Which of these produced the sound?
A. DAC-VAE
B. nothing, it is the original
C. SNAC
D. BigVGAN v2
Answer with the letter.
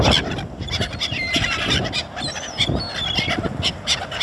B